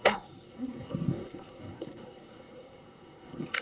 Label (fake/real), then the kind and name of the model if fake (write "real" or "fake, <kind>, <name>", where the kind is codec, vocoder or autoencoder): fake, codec, SNAC